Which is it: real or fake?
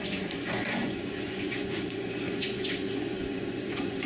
fake